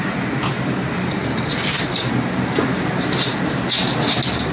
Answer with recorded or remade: recorded